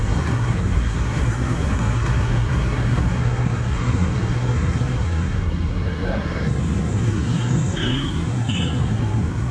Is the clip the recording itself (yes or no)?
no